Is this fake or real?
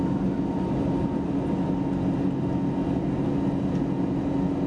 real